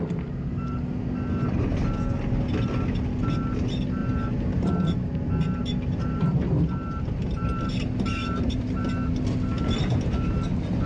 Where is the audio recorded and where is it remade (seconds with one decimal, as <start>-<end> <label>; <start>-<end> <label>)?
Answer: 0.0-4.0 recorded; 4.0-4.7 remade; 4.7-8.2 recorded; 8.2-8.9 remade; 8.9-10.9 recorded